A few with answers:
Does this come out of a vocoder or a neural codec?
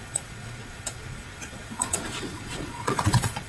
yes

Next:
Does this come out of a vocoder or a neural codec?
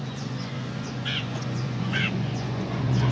yes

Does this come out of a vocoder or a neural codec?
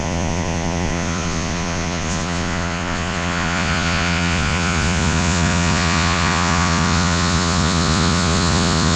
yes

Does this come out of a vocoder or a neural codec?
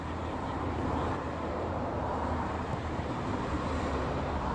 yes